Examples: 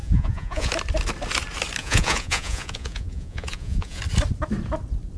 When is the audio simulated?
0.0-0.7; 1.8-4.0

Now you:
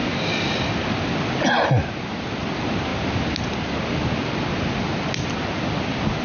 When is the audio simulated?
none